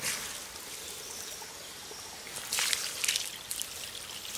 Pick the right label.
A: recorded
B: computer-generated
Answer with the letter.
A